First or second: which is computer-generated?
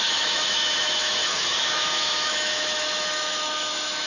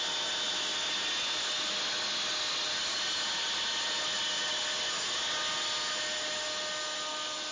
first